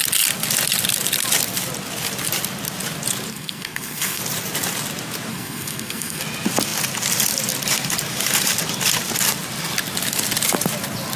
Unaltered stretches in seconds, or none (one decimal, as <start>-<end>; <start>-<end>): 0.0-3.3; 4.2-5.3; 6.2-11.2